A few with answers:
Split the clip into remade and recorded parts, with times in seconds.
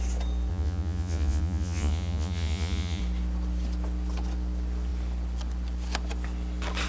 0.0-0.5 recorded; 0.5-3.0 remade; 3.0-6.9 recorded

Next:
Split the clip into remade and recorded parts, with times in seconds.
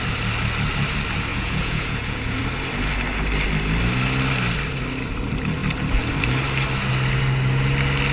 0.0-1.3 recorded; 1.3-2.4 remade; 2.4-8.1 recorded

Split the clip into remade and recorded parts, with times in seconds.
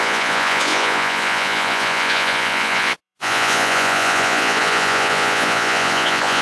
0.0-6.4 remade